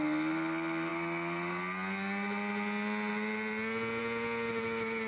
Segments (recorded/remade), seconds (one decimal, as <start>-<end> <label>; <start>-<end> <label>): 0.0-5.1 recorded